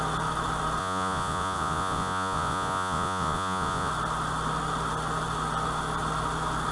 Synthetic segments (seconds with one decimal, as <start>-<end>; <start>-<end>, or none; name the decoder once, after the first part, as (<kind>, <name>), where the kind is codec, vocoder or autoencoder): 0.8-3.9 (vocoder, Vocos)